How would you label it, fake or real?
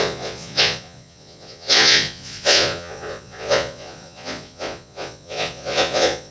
fake